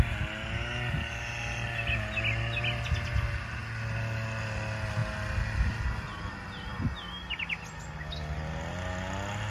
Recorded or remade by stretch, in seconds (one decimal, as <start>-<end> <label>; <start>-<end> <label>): 0.0-9.5 recorded